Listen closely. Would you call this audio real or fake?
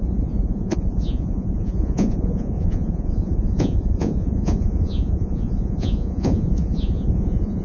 fake